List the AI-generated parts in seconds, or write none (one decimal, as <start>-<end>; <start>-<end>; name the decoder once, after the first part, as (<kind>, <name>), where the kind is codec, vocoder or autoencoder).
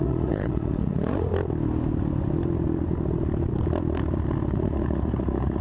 0.0-1.3 (vocoder, Vocos); 4.5-5.6